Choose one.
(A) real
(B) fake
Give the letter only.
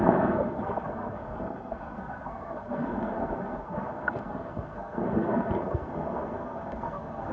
B